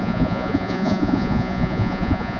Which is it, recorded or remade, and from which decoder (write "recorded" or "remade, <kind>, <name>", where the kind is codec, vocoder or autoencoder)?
remade, vocoder, Vocos